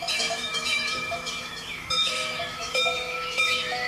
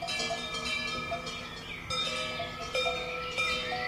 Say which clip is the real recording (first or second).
second